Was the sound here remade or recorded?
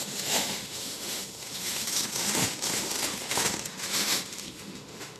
remade